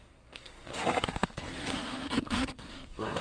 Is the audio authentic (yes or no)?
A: no